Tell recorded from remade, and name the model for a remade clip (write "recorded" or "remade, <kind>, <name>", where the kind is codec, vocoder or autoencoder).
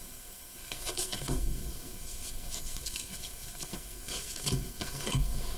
remade, codec, SNAC